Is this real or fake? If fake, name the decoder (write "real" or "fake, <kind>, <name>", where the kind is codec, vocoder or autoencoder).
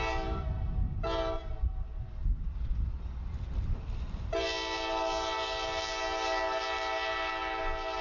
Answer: real